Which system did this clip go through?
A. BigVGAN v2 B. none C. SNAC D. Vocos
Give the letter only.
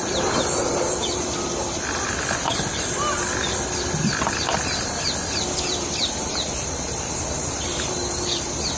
B